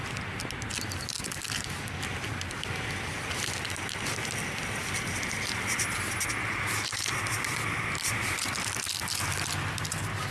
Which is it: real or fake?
real